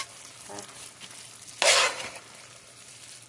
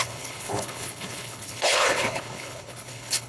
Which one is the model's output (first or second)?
second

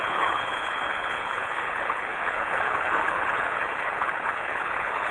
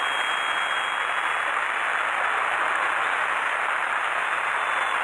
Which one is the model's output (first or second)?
first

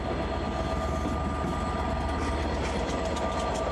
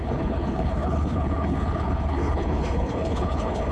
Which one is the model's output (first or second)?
second